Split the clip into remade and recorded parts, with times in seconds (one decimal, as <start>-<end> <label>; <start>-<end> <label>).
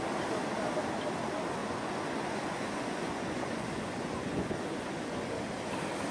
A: 0.0-1.6 recorded; 1.6-5.3 remade; 5.3-6.1 recorded